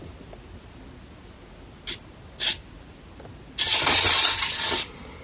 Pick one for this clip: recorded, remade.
recorded